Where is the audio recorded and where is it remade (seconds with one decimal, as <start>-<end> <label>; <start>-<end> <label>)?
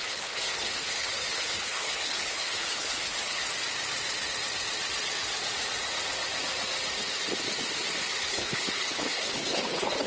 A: 0.0-3.4 remade; 3.4-8.3 recorded; 8.3-10.1 remade